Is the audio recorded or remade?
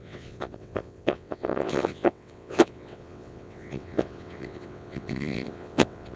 remade